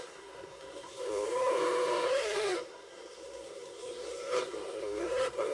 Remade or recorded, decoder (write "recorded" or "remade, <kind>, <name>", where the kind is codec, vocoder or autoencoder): remade, codec, SNAC